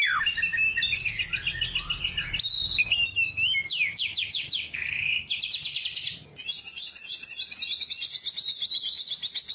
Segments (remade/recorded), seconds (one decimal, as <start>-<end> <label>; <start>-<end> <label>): 0.0-2.8 recorded; 2.8-5.8 remade; 5.8-9.5 recorded